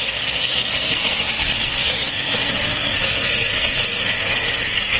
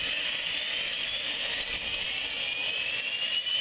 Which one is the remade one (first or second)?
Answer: first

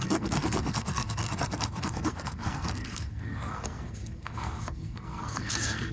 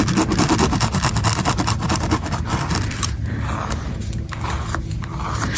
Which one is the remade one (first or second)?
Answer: first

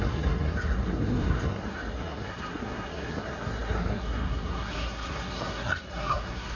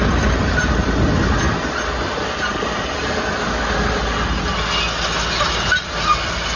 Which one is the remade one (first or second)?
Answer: first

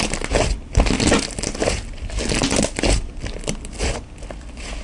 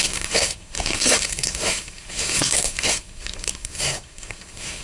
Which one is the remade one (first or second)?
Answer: second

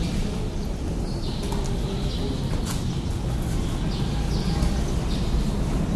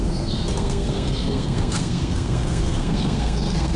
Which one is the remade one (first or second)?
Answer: second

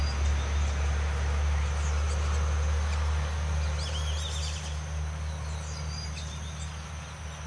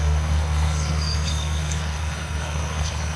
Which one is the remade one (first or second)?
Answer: second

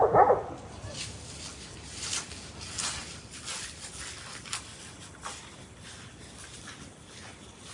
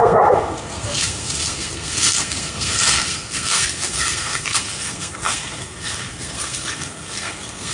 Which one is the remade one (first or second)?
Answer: second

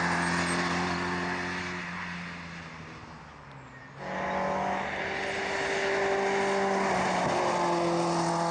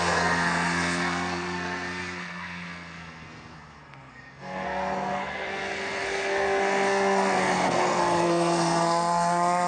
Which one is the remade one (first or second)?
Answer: second